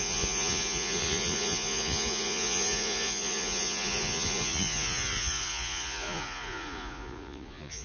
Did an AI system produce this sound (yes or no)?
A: yes